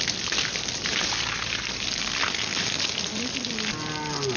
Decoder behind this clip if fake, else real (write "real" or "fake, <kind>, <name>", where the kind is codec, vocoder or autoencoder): real